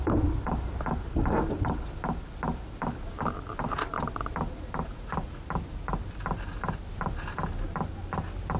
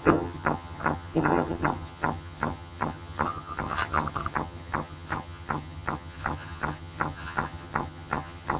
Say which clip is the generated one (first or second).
second